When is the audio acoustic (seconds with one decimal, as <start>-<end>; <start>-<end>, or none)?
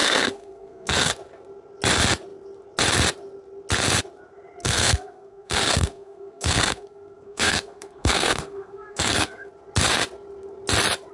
1.1-4.6; 9.5-11.1